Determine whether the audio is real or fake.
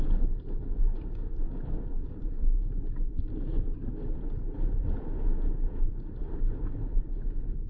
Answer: fake